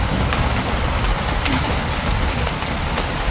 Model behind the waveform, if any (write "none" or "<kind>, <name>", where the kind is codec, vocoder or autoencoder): none